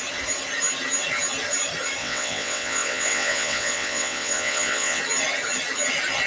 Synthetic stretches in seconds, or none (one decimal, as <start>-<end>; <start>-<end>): 2.0-5.0